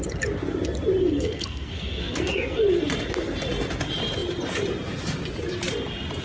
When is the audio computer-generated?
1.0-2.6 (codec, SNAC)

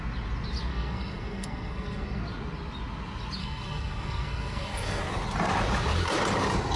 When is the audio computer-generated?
0.7-2.2 (codec, SNAC); 3.4-5.0

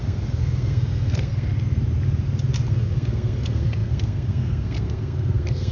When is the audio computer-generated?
0.0-1.5 (codec, SNAC); 2.7-5.7

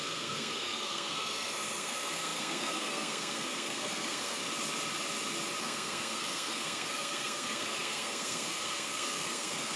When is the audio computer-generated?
0.0-4.4 (codec, SNAC); 5.6-9.8

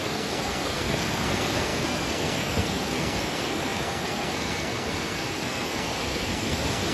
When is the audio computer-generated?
0.0-6.9 (codec, SNAC)

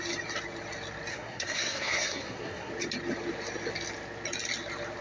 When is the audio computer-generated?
1.1-2.7 (codec, SNAC)

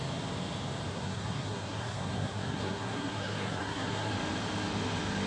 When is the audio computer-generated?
0.9-4.1 (codec, SNAC)

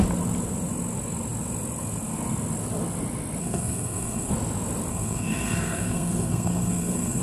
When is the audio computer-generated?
3.4-4.3 (codec, SNAC); 4.9-7.2